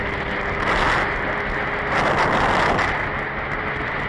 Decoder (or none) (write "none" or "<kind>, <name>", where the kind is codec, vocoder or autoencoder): none